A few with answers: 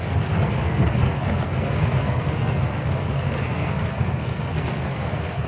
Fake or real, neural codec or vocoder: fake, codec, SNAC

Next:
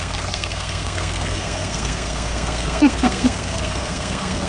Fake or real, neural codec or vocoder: fake, codec, SNAC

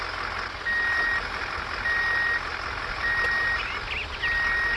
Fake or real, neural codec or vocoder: real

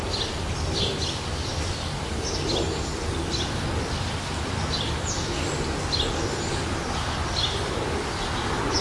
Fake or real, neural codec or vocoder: real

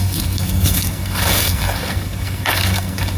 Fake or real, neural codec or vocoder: fake, codec, SNAC